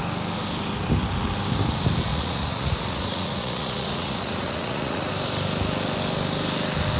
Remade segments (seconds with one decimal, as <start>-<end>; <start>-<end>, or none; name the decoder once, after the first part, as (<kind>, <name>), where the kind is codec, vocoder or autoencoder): 2.1-5.1 (vocoder, Vocos)